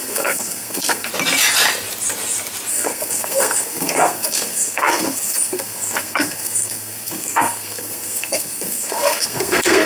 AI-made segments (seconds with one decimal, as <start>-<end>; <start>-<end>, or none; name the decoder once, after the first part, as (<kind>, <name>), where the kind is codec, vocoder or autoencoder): 0.0-1.1 (codec, SNAC); 2.7-9.9